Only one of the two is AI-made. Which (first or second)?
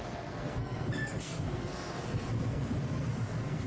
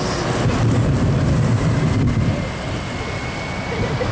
first